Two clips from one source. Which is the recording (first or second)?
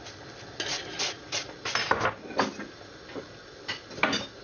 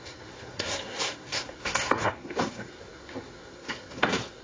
first